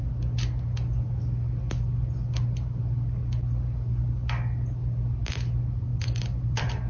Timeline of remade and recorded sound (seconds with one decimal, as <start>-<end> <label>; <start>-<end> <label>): 0.0-5.9 recorded; 5.9-6.9 remade